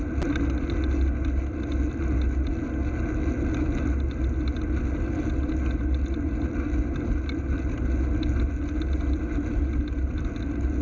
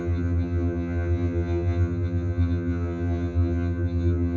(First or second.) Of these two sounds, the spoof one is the second